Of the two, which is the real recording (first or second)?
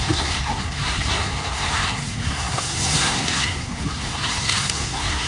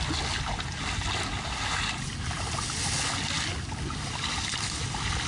second